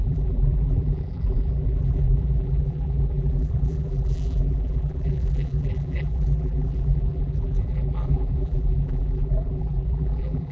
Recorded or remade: remade